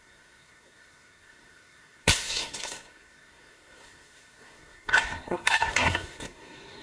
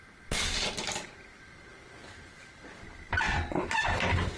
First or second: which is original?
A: second